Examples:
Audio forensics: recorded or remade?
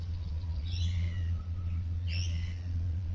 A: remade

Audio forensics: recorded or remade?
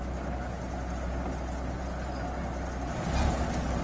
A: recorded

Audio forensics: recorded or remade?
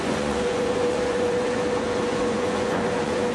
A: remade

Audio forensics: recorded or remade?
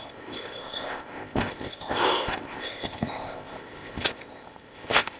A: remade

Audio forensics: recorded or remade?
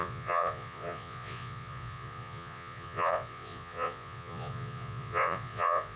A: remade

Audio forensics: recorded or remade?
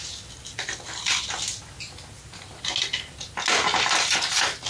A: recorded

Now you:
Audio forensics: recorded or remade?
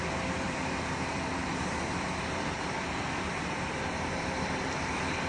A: remade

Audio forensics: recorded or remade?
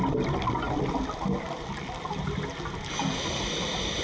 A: recorded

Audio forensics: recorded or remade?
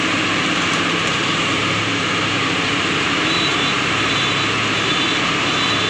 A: remade